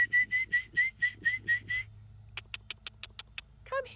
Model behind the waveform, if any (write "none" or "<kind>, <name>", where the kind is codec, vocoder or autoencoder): none